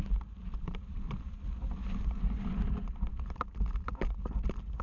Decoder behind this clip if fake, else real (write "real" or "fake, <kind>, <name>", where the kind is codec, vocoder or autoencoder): real